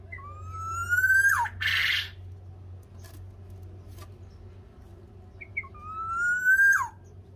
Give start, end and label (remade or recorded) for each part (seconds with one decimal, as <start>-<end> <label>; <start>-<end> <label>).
0.0-7.4 recorded